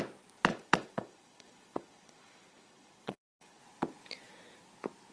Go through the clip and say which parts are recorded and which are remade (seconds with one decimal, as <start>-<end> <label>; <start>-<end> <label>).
0.0-0.5 recorded; 0.5-3.6 remade; 3.6-5.1 recorded